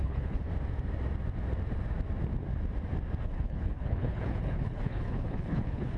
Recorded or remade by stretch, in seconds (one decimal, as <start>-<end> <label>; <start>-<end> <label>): 0.0-0.5 remade; 0.5-3.2 recorded; 3.2-6.0 remade